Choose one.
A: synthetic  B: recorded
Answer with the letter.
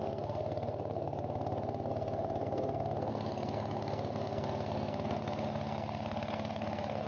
A